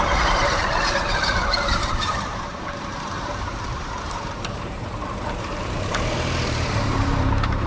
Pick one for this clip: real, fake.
fake